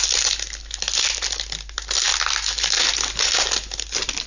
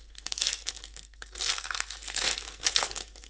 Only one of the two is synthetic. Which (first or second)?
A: second